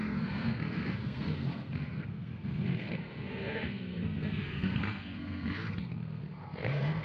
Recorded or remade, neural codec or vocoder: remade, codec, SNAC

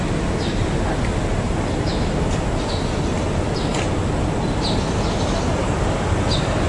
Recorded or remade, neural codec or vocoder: recorded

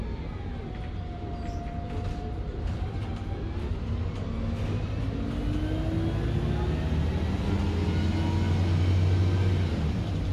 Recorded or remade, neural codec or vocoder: recorded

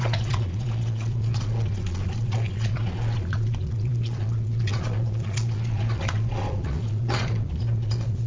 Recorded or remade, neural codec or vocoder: remade, vocoder, Vocos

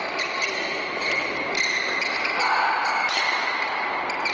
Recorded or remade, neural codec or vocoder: recorded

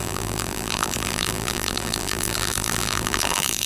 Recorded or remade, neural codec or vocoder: remade, vocoder, BigVGAN v2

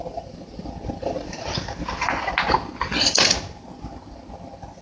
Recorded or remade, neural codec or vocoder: recorded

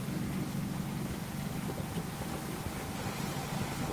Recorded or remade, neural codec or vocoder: recorded